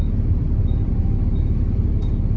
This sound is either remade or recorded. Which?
remade